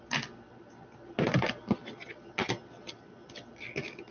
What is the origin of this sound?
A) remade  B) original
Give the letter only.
B